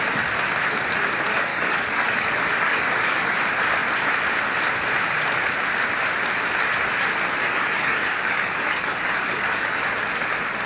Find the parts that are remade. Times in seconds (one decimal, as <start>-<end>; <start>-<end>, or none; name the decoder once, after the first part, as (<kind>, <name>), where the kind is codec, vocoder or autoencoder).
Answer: 1.5-3.4 (codec, DAC); 7.4-9.8